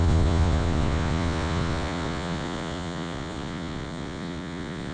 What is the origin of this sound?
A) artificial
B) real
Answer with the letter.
A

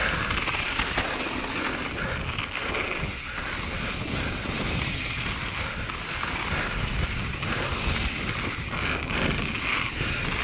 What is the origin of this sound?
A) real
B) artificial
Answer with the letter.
A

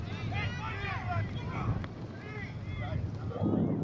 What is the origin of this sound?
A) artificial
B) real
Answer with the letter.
B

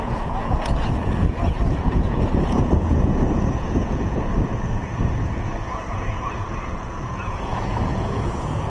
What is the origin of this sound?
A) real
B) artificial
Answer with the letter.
B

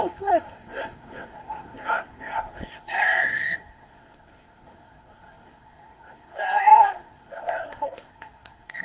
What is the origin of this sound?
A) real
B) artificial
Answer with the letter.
B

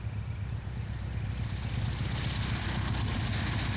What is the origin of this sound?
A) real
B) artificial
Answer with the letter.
A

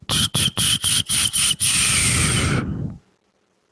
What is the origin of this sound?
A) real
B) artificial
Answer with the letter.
A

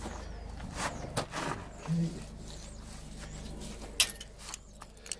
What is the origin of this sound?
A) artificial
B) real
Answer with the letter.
B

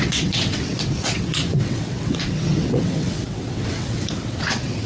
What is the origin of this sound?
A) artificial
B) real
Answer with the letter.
A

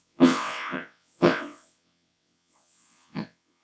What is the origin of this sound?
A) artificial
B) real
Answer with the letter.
A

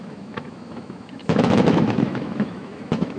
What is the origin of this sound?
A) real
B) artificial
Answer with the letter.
B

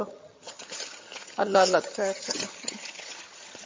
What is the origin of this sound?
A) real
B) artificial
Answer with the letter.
B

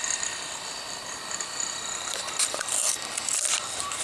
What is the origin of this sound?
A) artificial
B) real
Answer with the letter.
A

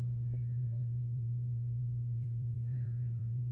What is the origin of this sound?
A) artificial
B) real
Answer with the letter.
A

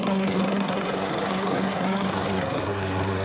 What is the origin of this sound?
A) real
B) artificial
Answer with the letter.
B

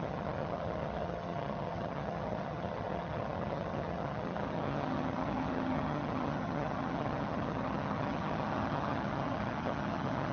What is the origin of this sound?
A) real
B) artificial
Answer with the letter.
B